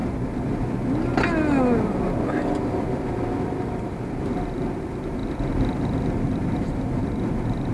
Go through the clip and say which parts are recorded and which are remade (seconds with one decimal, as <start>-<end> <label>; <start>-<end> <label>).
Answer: 0.0-7.7 recorded

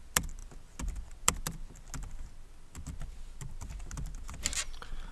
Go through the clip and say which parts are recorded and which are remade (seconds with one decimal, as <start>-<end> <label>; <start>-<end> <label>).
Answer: 0.0-5.1 recorded

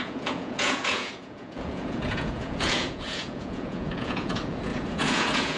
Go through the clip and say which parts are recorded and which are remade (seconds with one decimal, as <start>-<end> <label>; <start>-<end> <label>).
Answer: 0.0-5.6 remade

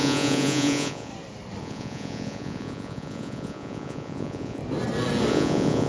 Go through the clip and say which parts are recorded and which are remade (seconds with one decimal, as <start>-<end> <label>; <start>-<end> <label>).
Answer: 0.0-1.1 remade; 1.1-1.6 recorded; 1.6-4.6 remade; 4.6-5.3 recorded; 5.3-5.9 remade

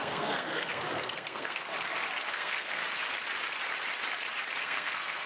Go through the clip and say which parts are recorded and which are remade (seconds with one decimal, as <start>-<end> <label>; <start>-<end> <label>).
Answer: 0.0-1.7 remade; 1.7-2.3 recorded; 2.3-2.8 remade; 2.8-4.6 recorded; 4.6-5.3 remade

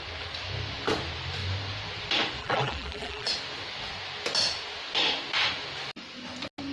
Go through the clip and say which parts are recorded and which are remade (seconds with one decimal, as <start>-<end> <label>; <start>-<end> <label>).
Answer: 0.0-2.4 recorded; 2.4-3.3 remade; 3.3-6.7 recorded